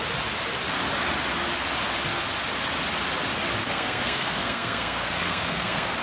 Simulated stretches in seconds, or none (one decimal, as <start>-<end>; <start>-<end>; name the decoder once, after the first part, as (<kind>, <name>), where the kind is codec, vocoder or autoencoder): 3.6-6.0 (codec, SNAC)